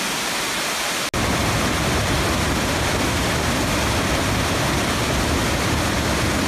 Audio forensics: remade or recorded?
recorded